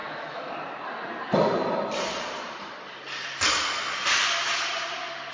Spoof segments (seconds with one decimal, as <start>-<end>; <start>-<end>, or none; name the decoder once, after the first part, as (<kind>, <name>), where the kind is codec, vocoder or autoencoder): 0.0-0.5 (autoencoder, DAC-VAE)